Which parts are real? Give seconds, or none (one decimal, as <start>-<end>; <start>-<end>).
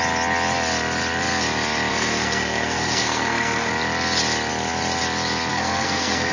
0.0-1.9; 3.7-5.5